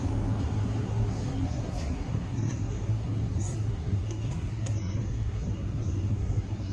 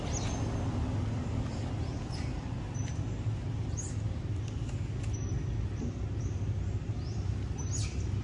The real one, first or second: second